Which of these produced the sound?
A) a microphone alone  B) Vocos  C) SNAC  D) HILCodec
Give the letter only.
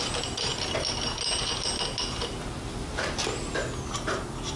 A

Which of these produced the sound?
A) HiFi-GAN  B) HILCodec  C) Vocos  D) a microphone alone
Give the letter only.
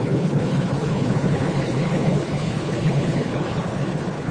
B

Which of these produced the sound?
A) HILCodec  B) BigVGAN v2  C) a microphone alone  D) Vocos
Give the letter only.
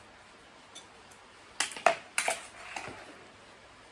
C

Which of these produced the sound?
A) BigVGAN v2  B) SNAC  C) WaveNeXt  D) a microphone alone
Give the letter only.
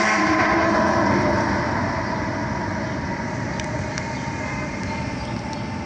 D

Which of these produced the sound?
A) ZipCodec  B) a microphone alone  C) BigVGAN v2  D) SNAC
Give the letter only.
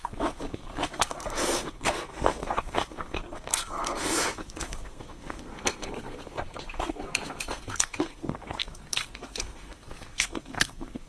D